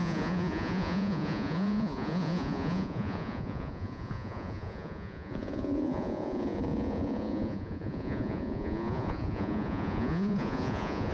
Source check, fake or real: fake